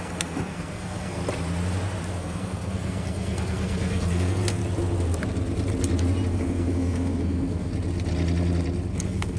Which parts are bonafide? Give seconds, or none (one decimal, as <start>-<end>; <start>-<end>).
1.2-2.1; 4.6-6.3; 7.7-8.9